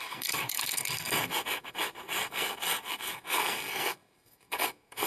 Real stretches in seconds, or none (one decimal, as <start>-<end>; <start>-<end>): none